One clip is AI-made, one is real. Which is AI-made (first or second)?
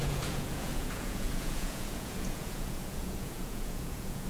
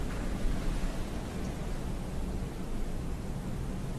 first